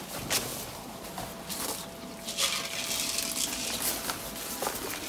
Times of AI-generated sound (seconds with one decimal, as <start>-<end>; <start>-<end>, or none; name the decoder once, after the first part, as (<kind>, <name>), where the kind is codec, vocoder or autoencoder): none